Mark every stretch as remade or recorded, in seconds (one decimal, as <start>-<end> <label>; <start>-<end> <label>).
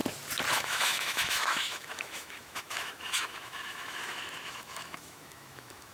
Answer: 0.0-0.5 recorded; 0.5-5.9 remade